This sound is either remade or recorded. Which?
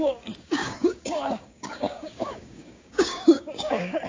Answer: remade